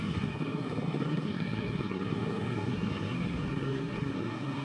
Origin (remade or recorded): remade